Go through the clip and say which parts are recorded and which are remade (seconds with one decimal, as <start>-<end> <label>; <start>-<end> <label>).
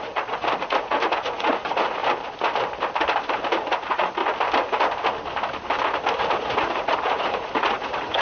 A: 0.0-2.0 remade; 2.0-3.5 recorded; 3.5-4.2 remade; 4.2-6.2 recorded; 6.2-8.2 remade